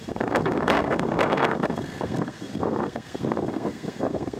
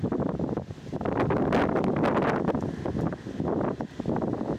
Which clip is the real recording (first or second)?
second